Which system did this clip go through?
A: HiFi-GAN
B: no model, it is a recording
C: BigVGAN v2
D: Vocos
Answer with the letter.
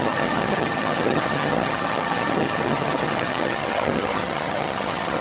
A